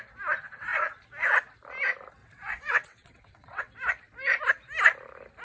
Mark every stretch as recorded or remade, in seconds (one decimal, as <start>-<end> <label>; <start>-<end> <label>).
0.0-2.2 recorded; 2.2-3.7 remade; 3.7-5.4 recorded